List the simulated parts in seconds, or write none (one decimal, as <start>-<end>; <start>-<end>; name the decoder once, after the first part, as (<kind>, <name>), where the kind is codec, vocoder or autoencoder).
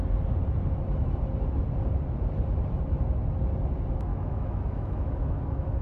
4.1-5.8 (autoencoder, DAC-VAE)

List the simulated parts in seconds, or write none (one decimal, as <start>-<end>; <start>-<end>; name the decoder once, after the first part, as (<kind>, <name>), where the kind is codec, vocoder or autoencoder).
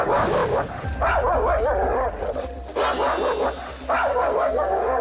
4.1-5.0 (codec, SNAC)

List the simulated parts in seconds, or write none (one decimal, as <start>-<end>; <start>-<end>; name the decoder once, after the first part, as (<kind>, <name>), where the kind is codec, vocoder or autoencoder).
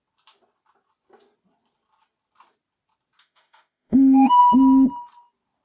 3.2-4.4 (autoencoder, DAC-VAE)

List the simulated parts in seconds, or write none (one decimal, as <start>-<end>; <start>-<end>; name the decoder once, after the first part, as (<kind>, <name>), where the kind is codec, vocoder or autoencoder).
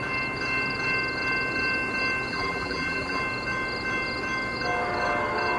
2.3-3.2 (vocoder, BigVGAN v2)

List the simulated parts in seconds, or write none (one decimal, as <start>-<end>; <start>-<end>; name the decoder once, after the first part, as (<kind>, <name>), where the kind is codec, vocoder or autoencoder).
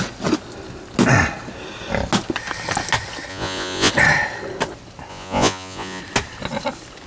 3.3-3.9 (vocoder, Vocos); 5.1-6.0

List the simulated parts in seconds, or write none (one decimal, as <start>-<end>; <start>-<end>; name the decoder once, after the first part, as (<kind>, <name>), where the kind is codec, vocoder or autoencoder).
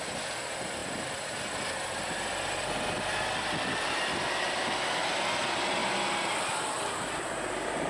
none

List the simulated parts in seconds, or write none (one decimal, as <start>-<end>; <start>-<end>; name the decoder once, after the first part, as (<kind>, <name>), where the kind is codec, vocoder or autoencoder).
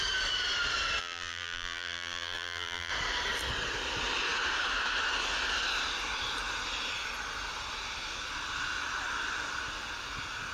1.0-2.9 (vocoder, BigVGAN v2)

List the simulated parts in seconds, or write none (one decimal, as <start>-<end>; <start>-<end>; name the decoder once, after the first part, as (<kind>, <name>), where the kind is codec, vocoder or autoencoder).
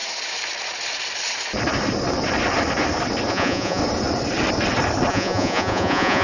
3.3-3.8 (vocoder, Vocos); 5.1-6.2